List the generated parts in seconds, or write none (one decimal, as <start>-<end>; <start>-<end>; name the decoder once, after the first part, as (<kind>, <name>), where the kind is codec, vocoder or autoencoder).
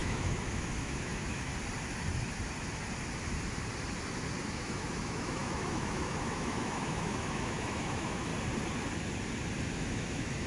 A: 0.0-1.5 (autoencoder, DAC-VAE); 4.5-8.3; 9.7-10.5